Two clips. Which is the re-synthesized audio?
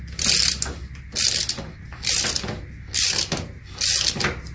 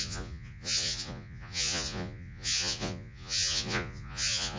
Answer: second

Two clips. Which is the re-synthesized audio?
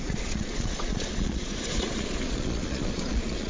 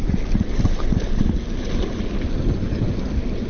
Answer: first